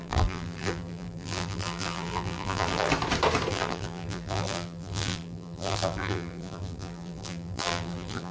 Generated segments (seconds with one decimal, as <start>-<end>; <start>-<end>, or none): 0.0-2.9; 3.5-8.3